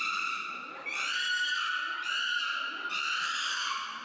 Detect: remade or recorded recorded